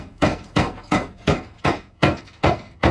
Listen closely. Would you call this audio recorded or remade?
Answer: remade